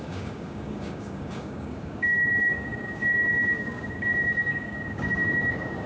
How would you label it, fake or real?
fake